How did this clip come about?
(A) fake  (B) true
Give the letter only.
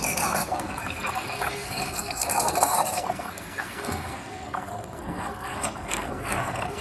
A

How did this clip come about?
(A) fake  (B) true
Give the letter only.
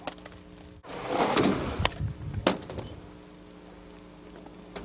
B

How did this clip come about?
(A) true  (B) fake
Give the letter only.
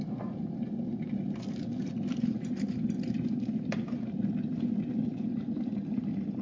A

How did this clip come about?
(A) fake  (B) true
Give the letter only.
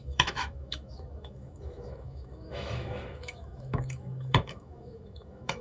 A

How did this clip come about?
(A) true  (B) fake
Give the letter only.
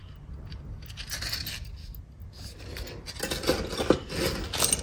A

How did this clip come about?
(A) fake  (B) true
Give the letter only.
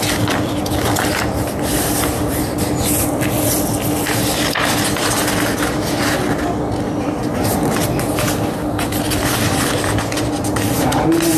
B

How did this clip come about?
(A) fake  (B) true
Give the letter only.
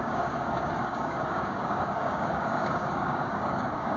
A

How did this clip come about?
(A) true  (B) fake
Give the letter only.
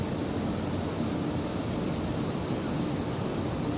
A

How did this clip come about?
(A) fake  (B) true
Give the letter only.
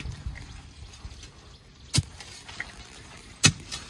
B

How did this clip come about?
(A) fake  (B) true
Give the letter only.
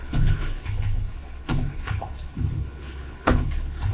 A